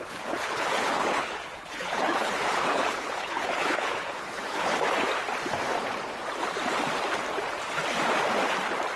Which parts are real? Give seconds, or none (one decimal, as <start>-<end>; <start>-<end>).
4.7-9.0